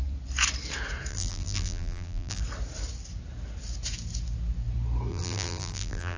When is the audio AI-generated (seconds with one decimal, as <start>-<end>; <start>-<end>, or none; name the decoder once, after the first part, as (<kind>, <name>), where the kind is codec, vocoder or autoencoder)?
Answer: 1.1-2.4 (vocoder, BigVGAN v2); 5.1-6.2